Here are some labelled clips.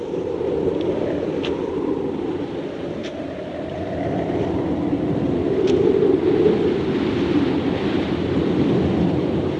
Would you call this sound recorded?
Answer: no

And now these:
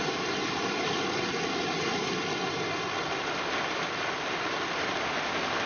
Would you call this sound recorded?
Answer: yes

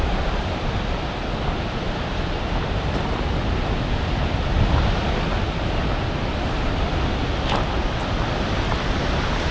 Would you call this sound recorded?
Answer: yes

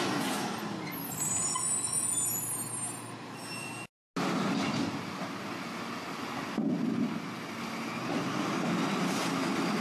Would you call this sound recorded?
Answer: yes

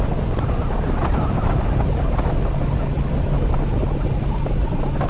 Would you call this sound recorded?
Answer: yes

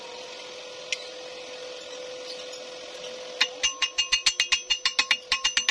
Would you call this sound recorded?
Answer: yes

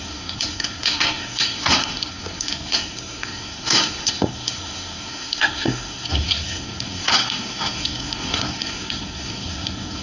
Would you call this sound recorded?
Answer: no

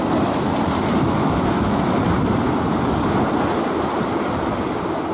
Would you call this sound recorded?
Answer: yes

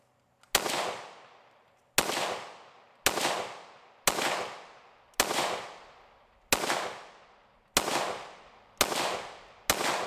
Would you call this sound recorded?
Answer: yes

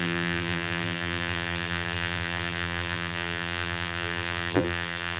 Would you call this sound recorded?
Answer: no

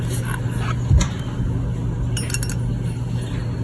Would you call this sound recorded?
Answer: yes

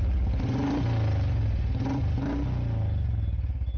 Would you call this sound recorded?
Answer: yes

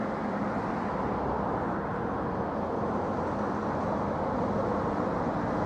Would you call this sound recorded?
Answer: yes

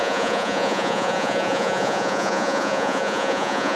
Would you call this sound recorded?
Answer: no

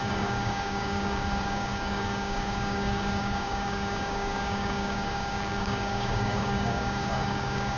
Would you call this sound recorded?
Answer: no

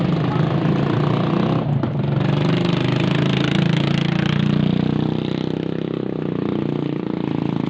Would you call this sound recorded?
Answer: yes